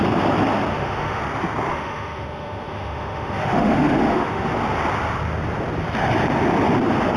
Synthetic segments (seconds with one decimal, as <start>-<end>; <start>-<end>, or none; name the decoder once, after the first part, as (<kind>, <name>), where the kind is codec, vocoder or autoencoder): 0.7-1.2 (autoencoder, DAC-VAE); 1.7-4.5